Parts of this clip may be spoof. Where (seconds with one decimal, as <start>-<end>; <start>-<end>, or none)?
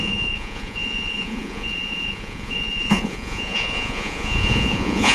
0.0-5.1